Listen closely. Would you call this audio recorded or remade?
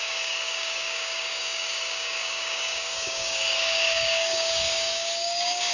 remade